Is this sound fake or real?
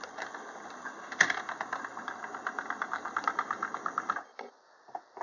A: real